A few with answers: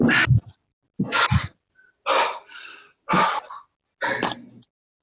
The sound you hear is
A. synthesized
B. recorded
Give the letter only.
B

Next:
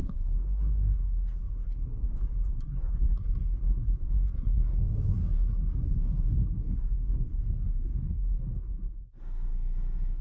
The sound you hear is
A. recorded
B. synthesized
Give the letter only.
B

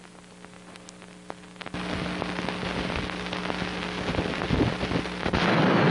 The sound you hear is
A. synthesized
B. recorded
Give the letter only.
B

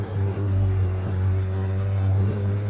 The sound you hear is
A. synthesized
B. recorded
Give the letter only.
A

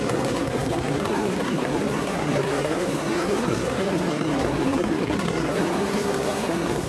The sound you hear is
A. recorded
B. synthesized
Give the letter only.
B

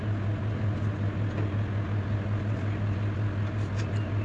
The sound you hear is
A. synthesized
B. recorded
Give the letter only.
B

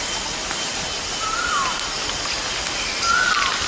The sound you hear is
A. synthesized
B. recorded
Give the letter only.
B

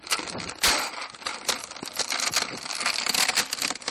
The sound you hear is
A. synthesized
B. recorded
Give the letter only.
B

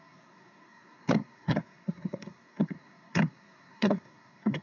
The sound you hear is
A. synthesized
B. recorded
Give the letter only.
A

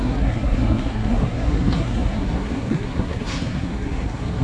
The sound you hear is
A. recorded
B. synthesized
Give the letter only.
B